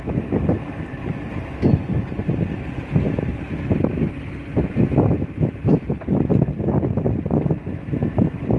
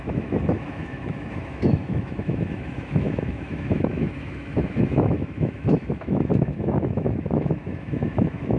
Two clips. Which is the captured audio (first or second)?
first